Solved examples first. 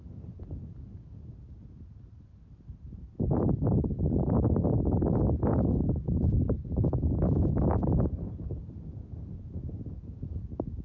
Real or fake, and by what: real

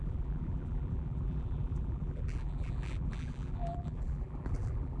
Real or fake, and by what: fake, vocoder, BigVGAN v2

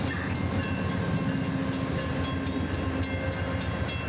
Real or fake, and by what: real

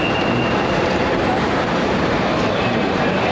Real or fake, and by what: fake, vocoder, BigVGAN v2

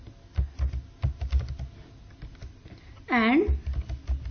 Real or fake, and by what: real